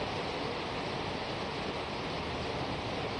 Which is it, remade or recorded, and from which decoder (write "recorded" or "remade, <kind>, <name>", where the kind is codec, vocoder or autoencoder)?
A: recorded